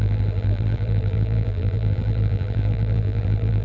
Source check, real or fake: fake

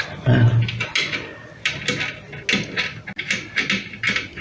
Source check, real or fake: real